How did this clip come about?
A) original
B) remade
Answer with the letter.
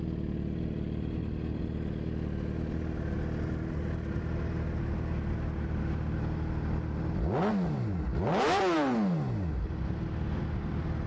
A